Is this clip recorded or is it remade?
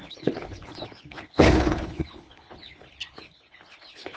remade